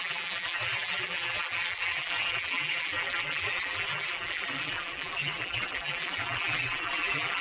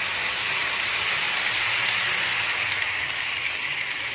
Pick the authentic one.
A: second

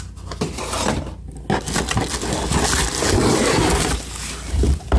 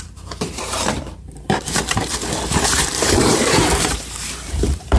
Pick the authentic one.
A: first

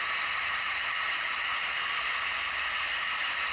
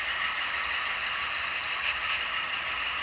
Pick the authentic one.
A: first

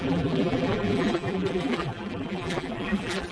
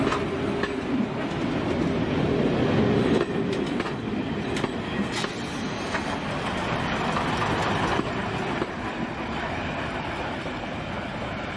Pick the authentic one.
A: second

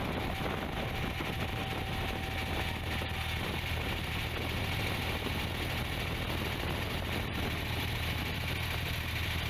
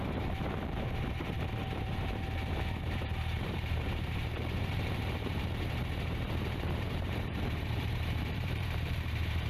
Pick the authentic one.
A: first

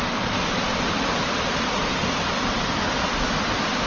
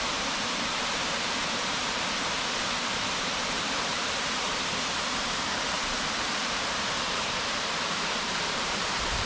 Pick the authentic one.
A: first